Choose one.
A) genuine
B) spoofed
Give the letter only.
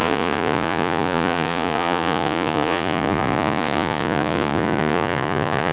B